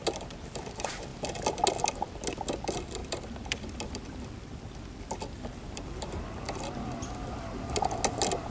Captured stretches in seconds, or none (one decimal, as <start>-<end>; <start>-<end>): 0.0-3.0; 7.8-8.5